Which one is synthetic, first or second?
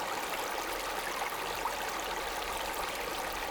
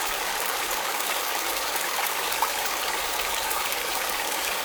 second